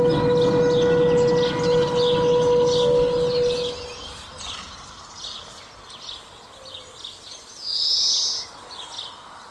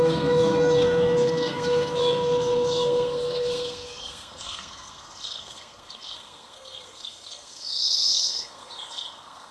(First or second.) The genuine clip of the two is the first